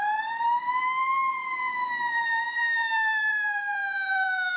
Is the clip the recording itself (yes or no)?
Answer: no